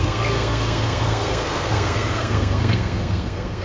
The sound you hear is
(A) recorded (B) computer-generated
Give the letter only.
B